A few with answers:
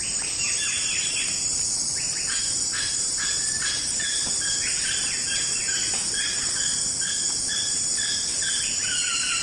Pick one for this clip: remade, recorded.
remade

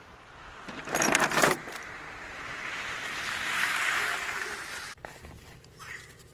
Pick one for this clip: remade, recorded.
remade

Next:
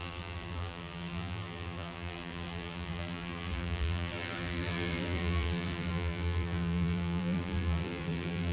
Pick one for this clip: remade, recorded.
remade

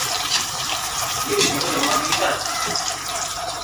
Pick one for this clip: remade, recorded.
remade